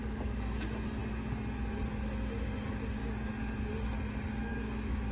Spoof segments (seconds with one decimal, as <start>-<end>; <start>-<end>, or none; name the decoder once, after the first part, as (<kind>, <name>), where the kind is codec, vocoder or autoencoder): 4.5-5.1 (autoencoder, DAC-VAE)